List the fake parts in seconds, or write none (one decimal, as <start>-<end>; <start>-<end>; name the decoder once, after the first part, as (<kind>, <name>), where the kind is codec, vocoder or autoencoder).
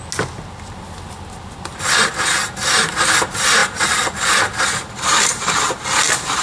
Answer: none